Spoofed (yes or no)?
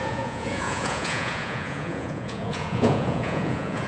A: yes